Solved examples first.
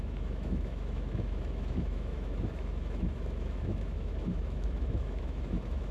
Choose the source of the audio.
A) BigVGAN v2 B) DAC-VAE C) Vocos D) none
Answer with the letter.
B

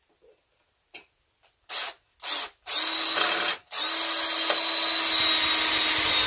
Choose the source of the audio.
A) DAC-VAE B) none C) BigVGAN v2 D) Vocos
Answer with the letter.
B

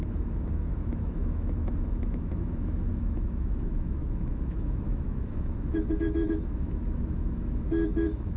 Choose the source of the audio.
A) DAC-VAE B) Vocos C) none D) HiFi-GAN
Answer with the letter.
A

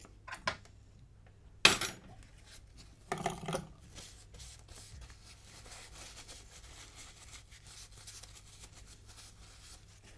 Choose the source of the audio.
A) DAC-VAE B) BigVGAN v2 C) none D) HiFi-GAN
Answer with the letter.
C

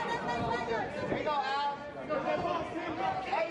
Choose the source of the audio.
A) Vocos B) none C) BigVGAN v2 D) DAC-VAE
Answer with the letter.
B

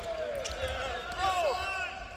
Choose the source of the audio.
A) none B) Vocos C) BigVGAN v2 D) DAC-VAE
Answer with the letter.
A